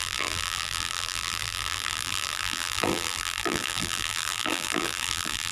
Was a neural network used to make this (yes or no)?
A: yes